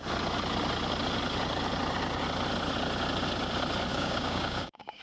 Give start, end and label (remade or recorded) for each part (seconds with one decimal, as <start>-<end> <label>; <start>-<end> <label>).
0.0-3.9 recorded; 3.9-5.0 remade